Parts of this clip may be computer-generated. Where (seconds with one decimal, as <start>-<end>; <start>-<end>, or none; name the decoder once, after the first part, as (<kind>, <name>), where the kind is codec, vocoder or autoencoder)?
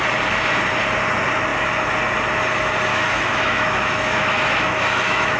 2.9-5.4 (autoencoder, DAC-VAE)